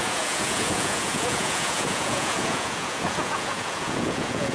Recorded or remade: remade